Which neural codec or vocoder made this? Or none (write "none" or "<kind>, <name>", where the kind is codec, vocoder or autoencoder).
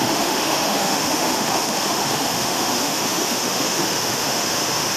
autoencoder, DAC-VAE